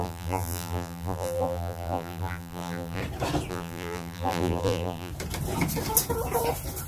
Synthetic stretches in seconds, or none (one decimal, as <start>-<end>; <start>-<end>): 0.0-3.0; 3.5-5.1